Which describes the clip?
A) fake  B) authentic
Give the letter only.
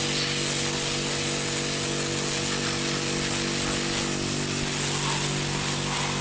B